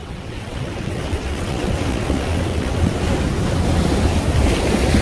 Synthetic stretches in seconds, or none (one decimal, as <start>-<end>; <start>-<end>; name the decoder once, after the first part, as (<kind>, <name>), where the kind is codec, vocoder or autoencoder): 0.0-2.9 (vocoder, WaveNeXt)